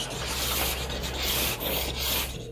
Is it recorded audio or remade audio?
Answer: recorded